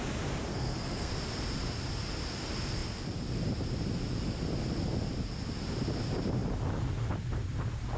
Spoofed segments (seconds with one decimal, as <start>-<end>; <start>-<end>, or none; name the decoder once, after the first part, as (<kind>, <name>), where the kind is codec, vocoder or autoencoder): 0.5-1.1 (codec, SNAC)

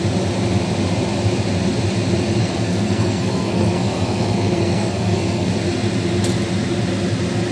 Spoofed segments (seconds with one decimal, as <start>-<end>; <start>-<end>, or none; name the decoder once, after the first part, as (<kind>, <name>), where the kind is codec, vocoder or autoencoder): 2.4-5.5 (codec, SNAC)